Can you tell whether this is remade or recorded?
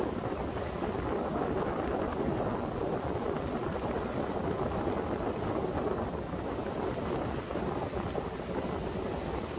recorded